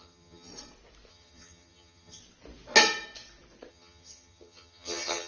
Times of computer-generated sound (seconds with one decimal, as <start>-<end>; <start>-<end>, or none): 0.0-0.5; 1.1-2.2; 3.7-5.3